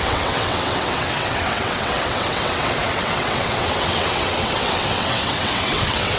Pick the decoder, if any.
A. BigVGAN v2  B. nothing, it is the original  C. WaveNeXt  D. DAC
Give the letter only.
C